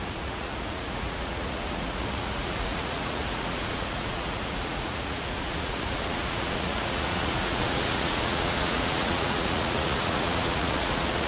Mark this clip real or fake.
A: fake